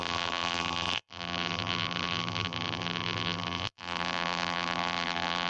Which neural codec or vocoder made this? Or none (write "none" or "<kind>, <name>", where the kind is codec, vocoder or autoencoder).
vocoder, BigVGAN v2